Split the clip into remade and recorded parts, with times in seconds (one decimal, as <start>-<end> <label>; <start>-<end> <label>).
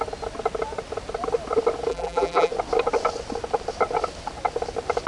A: 0.0-1.9 recorded; 1.9-2.5 remade; 2.5-5.1 recorded